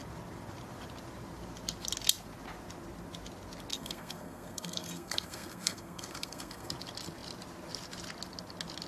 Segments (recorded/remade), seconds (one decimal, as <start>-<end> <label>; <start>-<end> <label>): 0.0-3.7 recorded; 3.7-6.7 remade; 6.7-8.9 recorded